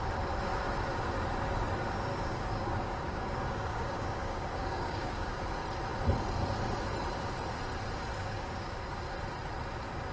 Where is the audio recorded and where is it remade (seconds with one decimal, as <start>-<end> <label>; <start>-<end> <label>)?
0.0-2.1 recorded; 2.1-5.4 remade; 5.4-8.1 recorded; 8.1-9.0 remade; 9.0-10.1 recorded

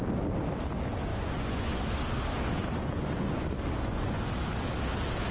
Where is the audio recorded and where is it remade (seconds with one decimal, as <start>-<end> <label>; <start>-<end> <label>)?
0.0-1.1 recorded; 1.1-1.8 remade; 1.8-2.8 recorded; 2.8-4.2 remade; 4.2-5.3 recorded